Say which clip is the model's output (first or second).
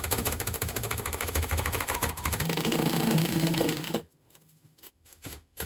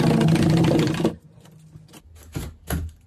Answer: first